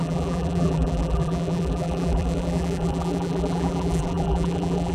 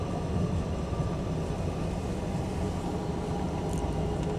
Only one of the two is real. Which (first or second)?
second